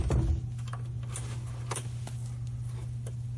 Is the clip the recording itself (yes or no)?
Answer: yes